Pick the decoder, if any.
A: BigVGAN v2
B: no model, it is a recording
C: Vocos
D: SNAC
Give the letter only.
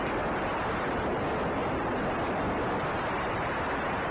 A